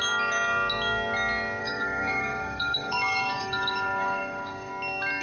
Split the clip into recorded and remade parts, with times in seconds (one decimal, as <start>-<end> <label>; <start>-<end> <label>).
0.0-1.6 recorded; 1.6-4.7 remade; 4.7-5.2 recorded